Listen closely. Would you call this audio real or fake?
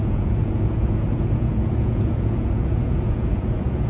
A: fake